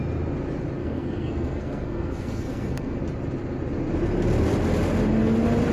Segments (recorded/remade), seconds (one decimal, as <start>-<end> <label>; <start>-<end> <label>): 0.0-0.8 recorded; 0.8-3.0 remade; 3.0-5.7 recorded

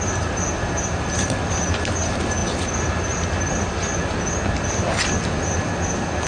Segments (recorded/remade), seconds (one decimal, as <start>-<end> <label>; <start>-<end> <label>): 0.0-6.3 recorded